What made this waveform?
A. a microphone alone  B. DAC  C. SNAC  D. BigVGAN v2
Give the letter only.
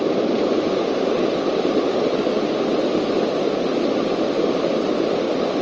A